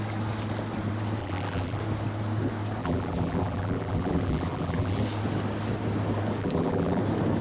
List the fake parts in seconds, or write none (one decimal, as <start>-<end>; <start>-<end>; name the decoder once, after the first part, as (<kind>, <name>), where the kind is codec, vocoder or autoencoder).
1.2-1.8 (vocoder, BigVGAN v2); 2.8-5.0; 6.4-7.0